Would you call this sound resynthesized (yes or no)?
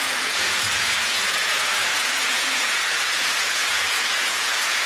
yes